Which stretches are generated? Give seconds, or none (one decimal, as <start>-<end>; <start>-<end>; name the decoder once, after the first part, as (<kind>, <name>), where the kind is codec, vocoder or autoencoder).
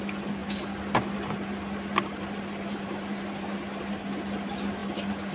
none